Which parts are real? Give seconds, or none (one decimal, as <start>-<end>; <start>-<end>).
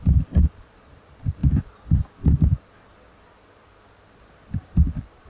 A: 1.4-4.6